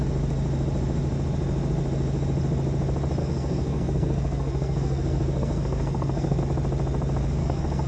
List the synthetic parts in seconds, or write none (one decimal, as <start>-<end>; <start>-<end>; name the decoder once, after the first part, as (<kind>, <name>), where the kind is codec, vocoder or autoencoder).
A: 3.2-6.4 (codec, SNAC); 7.4-7.9